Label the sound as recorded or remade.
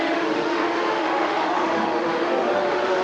remade